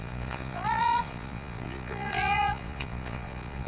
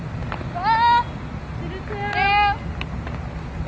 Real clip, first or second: second